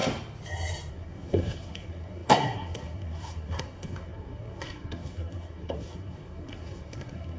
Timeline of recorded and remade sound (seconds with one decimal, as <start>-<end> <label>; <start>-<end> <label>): 0.0-0.9 recorded; 0.9-7.4 remade